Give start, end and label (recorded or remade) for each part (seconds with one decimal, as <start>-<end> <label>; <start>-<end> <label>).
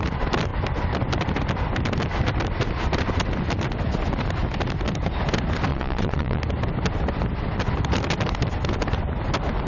0.0-5.7 recorded; 5.7-6.4 remade; 6.4-9.7 recorded